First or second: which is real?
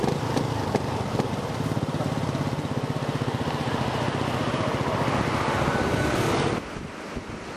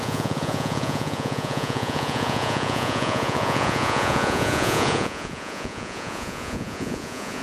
first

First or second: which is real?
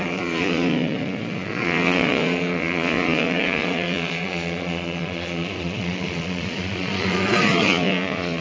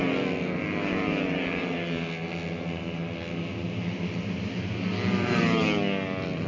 second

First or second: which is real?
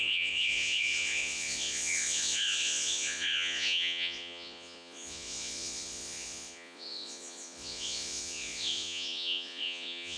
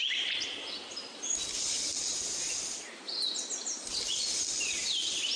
second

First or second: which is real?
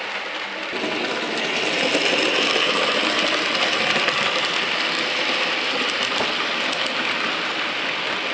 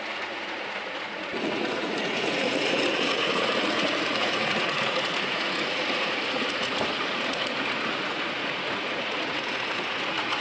first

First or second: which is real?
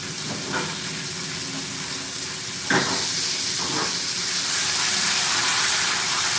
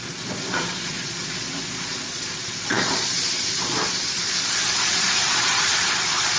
first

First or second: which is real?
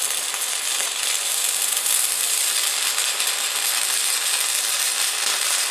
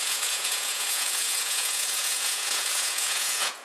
first